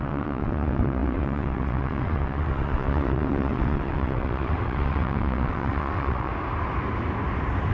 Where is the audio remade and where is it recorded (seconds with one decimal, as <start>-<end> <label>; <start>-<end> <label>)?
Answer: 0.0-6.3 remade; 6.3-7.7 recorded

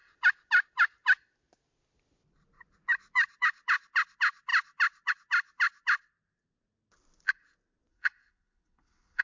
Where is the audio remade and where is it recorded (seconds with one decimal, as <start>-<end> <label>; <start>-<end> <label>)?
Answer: 0.0-7.9 recorded; 7.9-9.2 remade

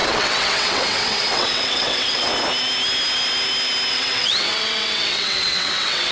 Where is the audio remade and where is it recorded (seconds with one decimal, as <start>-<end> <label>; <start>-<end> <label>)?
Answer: 0.0-2.3 remade; 2.3-3.9 recorded; 3.9-6.1 remade

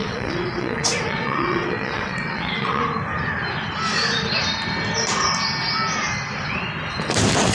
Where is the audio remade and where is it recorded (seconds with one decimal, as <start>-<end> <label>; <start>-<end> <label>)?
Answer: 0.0-2.8 remade; 2.8-7.5 recorded